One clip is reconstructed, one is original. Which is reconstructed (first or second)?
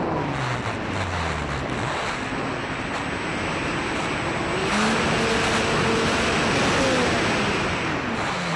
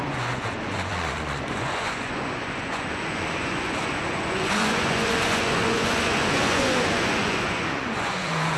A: second